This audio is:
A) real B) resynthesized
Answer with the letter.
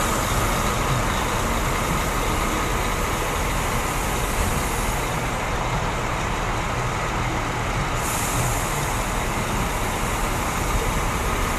A